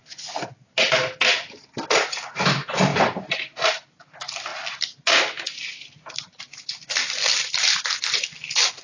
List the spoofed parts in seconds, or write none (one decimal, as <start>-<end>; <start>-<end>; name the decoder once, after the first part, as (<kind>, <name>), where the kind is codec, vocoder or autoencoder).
none